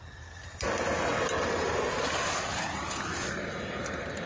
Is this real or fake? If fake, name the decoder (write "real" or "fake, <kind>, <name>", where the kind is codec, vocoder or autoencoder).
real